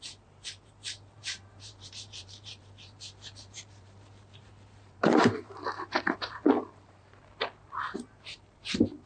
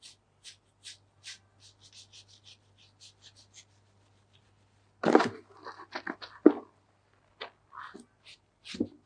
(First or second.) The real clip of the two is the second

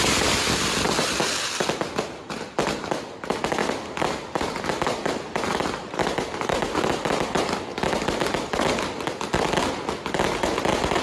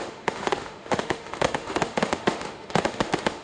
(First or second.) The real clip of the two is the first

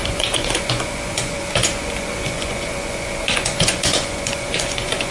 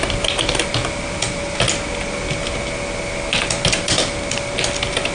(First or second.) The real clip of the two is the second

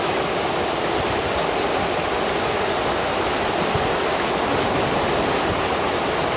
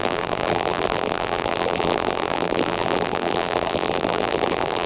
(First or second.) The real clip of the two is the first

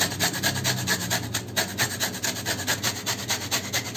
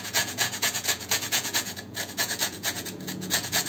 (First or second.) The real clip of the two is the first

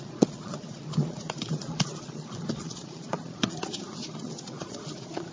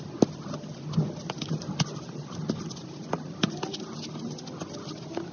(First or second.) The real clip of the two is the second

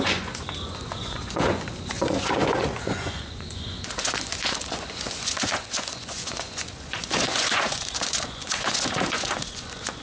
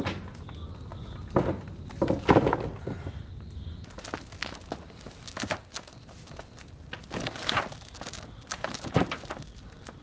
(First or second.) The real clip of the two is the second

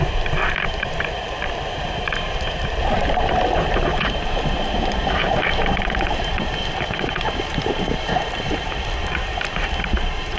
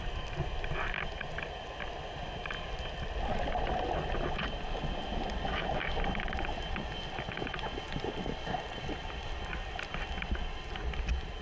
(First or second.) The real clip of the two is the second